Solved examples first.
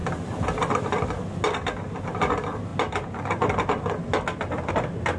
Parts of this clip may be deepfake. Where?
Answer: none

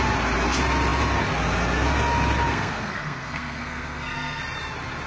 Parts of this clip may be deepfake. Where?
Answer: 2.5-4.4 (codec, SNAC)

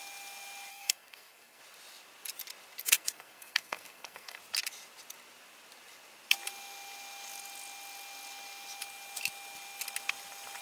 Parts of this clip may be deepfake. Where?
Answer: 0.7-1.6 (codec, SNAC); 2.8-4.4

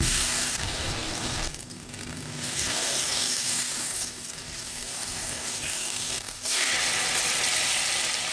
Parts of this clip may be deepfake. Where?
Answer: 0.0-6.7 (codec, DAC)